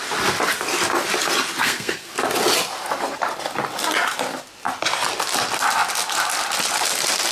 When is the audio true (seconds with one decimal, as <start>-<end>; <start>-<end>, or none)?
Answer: 0.0-1.6; 2.1-7.3